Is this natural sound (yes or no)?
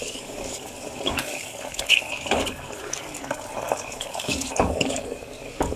no